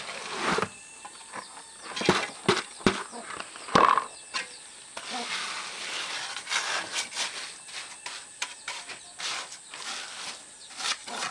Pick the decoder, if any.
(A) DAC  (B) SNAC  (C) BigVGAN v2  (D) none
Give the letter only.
D